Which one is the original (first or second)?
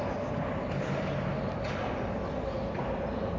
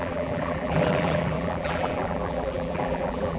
first